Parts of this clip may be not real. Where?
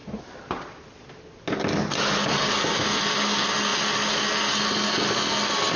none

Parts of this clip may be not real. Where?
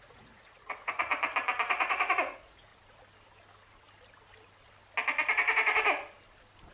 0.0-1.1 (vocoder, Vocos); 1.7-2.7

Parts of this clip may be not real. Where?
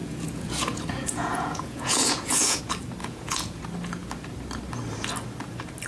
0.0-2.6 (vocoder, Vocos); 3.0-3.6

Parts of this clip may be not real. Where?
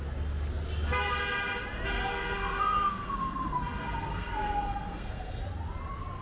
2.1-3.6 (codec, SNAC); 4.1-5.4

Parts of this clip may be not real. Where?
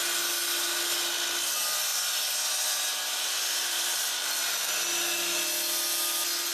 1.9-4.7 (vocoder, BigVGAN v2)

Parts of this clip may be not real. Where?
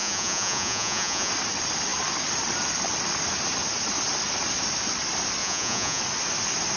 0.0-1.3 (vocoder, Vocos); 5.4-6.0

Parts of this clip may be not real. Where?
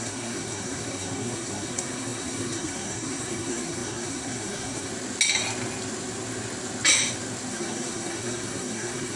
0.0-4.9 (codec, SNAC); 7.5-9.2